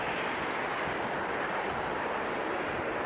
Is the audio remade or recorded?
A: recorded